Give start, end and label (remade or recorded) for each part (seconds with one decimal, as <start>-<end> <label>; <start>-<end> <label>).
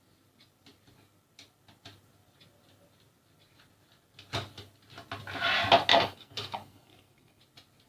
0.0-5.9 recorded; 5.9-7.4 remade; 7.4-7.9 recorded